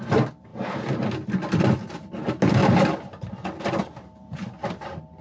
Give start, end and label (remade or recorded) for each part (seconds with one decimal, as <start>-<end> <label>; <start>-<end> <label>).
0.0-5.2 recorded